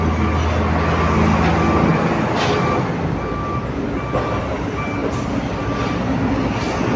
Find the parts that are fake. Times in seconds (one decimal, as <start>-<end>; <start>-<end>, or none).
none